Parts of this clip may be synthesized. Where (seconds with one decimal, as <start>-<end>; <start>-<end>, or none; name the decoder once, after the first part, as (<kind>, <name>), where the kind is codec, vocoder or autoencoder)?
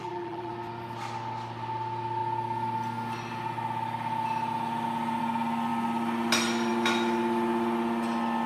0.0-0.5 (vocoder, BigVGAN v2)